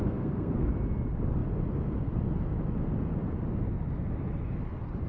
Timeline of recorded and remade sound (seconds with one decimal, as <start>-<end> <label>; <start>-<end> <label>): 0.0-0.7 remade; 0.7-5.1 recorded

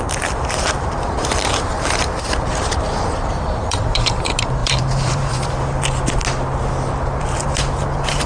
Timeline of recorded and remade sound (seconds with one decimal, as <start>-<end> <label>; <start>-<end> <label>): 0.0-6.2 remade; 6.2-7.2 recorded; 7.2-8.3 remade

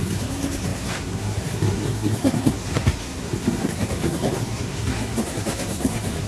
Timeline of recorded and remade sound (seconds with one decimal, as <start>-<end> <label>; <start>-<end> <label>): 0.0-6.3 remade

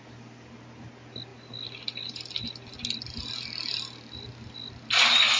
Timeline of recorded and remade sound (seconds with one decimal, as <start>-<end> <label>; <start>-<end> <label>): 0.0-5.4 recorded

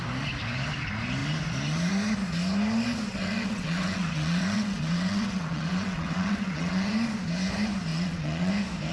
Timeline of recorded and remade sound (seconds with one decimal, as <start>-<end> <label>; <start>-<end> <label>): 0.0-3.1 recorded; 3.1-6.9 remade; 6.9-7.9 recorded; 7.9-8.5 remade; 8.5-8.9 recorded

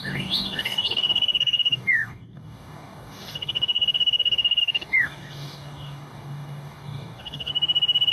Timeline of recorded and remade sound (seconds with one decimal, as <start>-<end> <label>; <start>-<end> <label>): 0.0-7.5 remade; 7.5-8.1 recorded

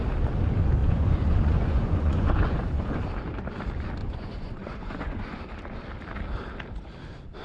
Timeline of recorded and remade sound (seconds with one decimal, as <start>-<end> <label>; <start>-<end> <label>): 0.0-0.8 recorded; 0.8-3.0 remade; 3.0-4.0 recorded; 4.0-5.4 remade; 5.4-7.4 recorded

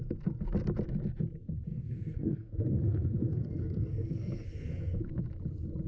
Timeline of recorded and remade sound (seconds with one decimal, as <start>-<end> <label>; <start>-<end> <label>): 0.0-1.7 recorded; 1.7-5.2 remade; 5.2-5.9 recorded